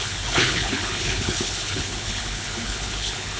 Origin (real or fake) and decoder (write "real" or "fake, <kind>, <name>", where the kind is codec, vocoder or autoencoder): fake, codec, HILCodec